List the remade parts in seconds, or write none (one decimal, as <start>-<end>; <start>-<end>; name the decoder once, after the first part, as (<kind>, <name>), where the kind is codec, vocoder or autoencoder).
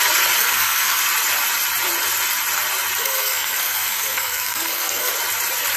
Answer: 0.4-1.0 (codec, SNAC); 3.0-5.1